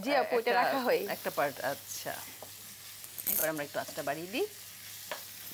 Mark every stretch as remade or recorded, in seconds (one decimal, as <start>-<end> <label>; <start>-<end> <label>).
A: 0.0-5.5 recorded